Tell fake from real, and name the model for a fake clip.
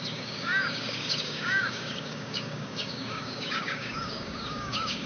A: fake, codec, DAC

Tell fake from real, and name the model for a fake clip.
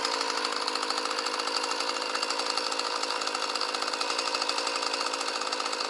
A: real